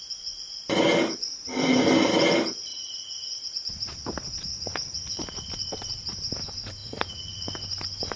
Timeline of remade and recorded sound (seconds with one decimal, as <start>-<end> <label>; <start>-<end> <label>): 0.0-2.7 recorded; 2.7-3.4 remade; 3.4-4.5 recorded; 4.5-5.2 remade; 5.2-6.8 recorded; 6.8-7.5 remade; 7.5-8.2 recorded